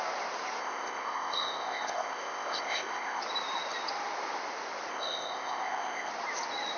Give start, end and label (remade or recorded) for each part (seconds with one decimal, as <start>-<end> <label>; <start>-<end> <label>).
0.0-0.6 recorded; 0.6-3.2 remade; 3.2-4.9 recorded; 4.9-6.1 remade; 6.1-6.8 recorded

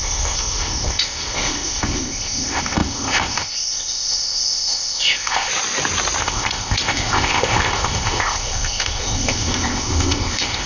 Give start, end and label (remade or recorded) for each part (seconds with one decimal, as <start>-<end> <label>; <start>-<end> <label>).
0.0-5.5 remade; 5.5-6.2 recorded; 6.2-10.7 remade